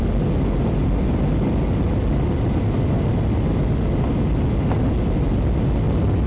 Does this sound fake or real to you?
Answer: real